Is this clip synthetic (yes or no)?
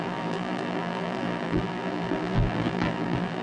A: yes